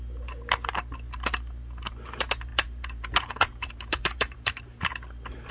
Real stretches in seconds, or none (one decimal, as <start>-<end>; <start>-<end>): 0.0-2.5; 4.6-5.5